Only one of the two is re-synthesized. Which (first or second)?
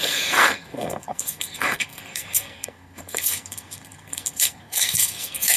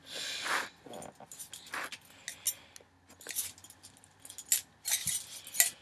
first